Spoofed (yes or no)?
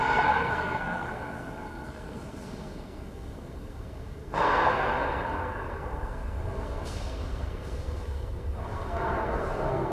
yes